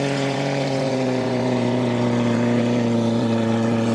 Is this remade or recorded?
remade